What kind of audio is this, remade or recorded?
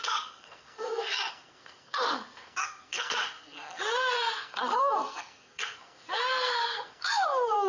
remade